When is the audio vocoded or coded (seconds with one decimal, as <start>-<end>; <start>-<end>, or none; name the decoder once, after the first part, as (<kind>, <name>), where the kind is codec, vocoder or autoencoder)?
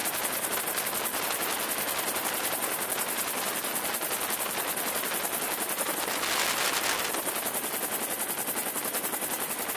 none